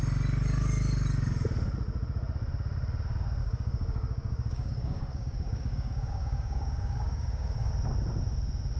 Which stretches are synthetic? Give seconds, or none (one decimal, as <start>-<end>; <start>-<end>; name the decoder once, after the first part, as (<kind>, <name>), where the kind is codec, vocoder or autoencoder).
3.4-7.7 (codec, DAC)